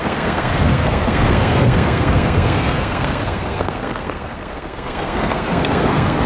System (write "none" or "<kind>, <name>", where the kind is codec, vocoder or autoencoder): codec, SNAC